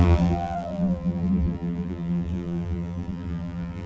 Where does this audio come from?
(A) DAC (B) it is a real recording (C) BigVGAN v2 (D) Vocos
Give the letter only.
C